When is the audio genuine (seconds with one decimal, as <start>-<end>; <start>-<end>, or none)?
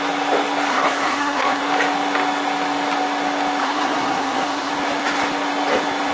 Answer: 0.0-0.7; 1.6-3.6; 4.7-6.1